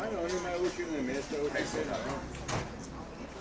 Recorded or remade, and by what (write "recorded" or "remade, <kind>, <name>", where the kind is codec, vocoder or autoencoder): recorded